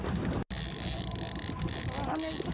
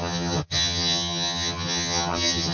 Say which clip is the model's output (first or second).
second